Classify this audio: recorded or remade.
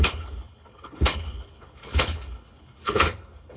remade